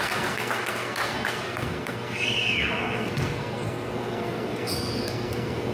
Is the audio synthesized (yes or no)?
yes